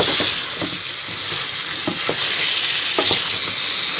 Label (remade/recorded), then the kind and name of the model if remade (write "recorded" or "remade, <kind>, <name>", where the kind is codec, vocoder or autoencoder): recorded